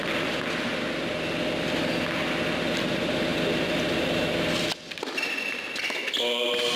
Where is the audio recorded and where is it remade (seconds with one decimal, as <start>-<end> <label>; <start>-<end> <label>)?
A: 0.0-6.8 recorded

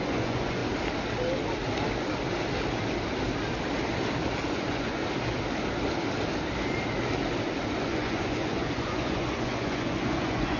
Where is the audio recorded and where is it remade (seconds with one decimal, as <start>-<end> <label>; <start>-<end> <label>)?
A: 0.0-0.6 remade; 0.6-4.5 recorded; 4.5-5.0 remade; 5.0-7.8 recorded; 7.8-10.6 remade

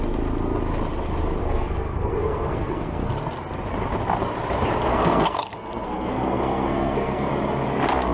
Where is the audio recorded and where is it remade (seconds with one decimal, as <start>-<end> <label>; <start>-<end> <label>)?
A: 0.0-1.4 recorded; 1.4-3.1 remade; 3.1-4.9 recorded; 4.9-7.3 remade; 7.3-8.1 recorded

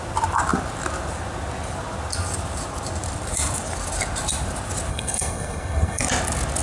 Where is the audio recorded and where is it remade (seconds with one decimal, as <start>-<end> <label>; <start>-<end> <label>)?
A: 0.0-4.9 recorded; 4.9-6.0 remade; 6.0-6.6 recorded

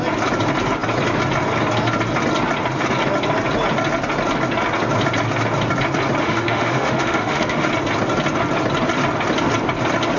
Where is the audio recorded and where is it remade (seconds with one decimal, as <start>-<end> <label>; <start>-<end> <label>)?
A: 0.0-6.2 recorded; 6.2-7.7 remade; 7.7-10.2 recorded

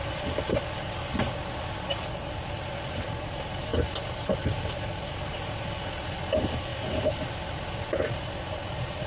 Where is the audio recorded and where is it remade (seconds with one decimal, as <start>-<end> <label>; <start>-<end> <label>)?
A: 0.0-9.1 recorded

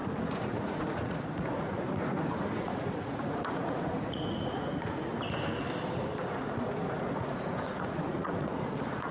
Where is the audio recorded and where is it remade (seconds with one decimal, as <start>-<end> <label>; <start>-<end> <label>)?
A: 0.0-5.1 remade; 5.1-6.4 recorded; 6.4-9.1 remade